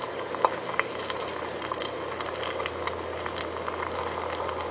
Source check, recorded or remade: recorded